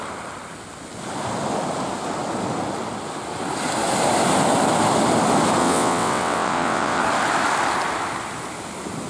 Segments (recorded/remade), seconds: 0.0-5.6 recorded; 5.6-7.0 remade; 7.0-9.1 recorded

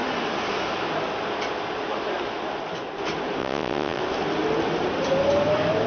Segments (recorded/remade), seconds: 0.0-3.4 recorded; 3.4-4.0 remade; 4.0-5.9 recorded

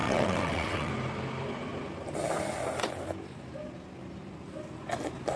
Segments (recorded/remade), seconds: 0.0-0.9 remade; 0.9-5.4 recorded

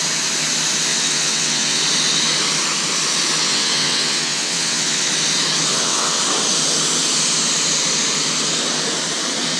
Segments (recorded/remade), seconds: 0.0-0.9 recorded; 0.9-1.8 remade; 1.8-3.4 recorded; 3.4-5.1 remade; 5.1-5.7 recorded; 5.7-6.2 remade; 6.2-9.6 recorded

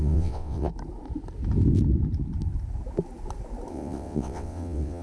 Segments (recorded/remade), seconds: 0.0-0.7 remade; 0.7-3.7 recorded; 3.7-5.0 remade

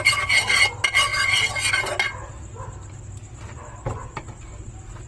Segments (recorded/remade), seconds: 0.0-5.1 recorded